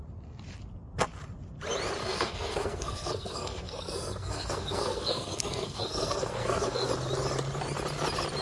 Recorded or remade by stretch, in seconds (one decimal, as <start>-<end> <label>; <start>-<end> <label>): 0.0-2.0 recorded; 2.0-6.9 remade; 6.9-8.4 recorded